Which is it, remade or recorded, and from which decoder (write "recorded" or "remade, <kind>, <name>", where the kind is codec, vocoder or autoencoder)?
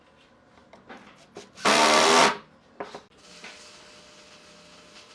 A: recorded